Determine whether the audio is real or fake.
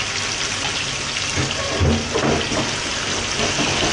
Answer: real